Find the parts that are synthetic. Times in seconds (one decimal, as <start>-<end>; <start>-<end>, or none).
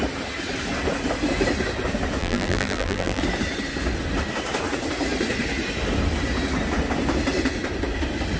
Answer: 2.2-3.2